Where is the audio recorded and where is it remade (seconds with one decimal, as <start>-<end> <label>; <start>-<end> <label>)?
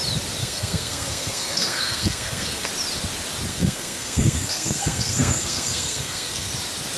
0.0-0.4 recorded; 0.4-2.7 remade; 2.7-3.5 recorded; 3.5-6.5 remade; 6.5-7.0 recorded